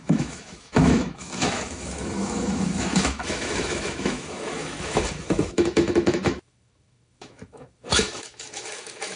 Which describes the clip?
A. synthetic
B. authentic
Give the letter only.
A